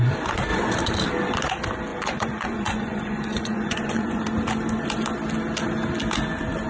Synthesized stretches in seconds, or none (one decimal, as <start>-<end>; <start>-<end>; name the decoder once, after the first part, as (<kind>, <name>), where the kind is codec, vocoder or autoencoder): 1.9-4.2 (vocoder, Vocos)